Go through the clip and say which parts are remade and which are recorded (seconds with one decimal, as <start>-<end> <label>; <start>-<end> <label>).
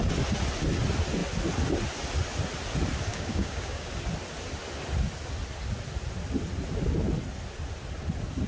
0.0-3.1 recorded; 3.1-3.9 remade; 3.9-8.5 recorded